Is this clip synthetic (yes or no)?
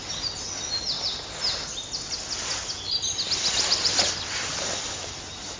no